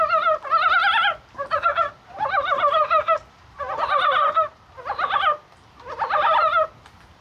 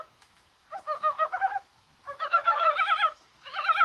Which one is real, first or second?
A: first